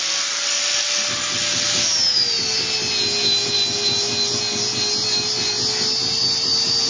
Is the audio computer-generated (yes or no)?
no